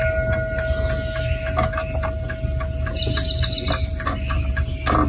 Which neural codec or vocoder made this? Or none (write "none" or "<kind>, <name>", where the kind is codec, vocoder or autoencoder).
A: none